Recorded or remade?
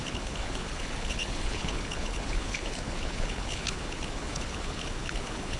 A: remade